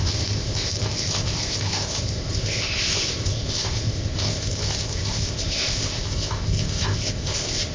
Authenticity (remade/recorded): remade